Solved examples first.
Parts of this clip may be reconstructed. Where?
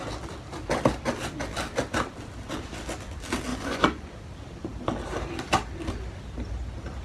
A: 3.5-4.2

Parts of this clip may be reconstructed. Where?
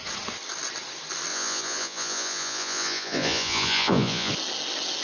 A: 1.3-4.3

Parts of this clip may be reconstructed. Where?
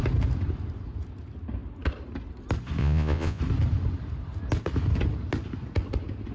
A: 2.8-3.4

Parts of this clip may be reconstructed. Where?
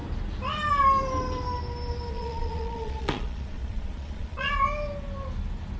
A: 2.1-4.5